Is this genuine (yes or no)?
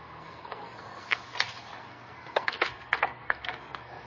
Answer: no